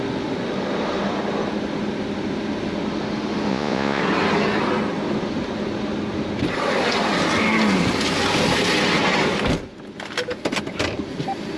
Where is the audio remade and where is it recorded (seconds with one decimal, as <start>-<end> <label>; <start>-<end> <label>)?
0.0-3.5 recorded; 3.5-4.0 remade; 4.0-11.6 recorded